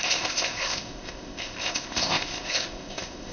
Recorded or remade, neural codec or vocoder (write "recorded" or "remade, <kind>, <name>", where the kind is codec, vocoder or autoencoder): remade, codec, ZipCodec